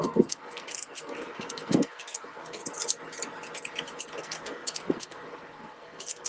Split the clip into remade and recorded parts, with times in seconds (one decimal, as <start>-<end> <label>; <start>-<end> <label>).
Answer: 0.0-2.6 remade; 2.6-4.2 recorded; 4.2-6.3 remade